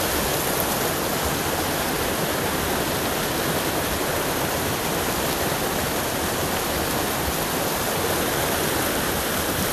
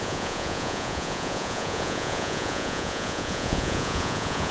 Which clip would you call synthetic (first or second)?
second